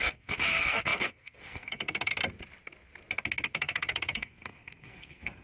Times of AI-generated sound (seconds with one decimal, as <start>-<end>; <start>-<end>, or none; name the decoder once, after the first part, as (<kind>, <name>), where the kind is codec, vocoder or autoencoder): 0.0-2.1 (codec, SNAC); 3.5-5.4